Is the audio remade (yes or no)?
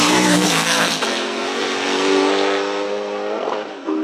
yes